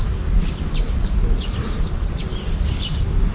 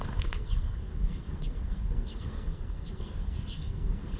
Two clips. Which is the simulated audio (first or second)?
second